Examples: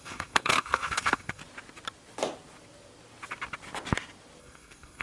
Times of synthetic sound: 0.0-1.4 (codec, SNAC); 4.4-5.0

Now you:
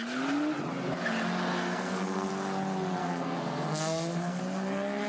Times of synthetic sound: 1.5-2.3 (codec, SNAC); 3.0-4.4

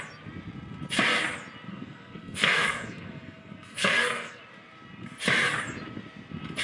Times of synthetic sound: 1.7-4.4 (codec, SNAC)

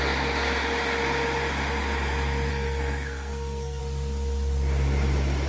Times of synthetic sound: 2.5-3.8 (codec, SNAC)

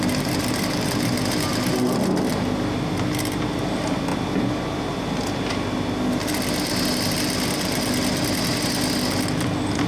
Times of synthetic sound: none

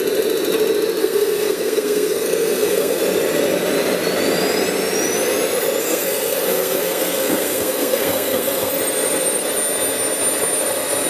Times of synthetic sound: 1.0-3.0 (codec, SNAC); 5.8-8.7

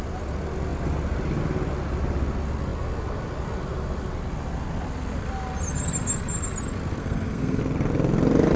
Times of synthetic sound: 7.0-7.6 (codec, SNAC)

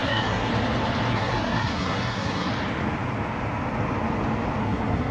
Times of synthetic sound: 0.0-0.5 (codec, SNAC); 1.1-2.5; 4.6-5.1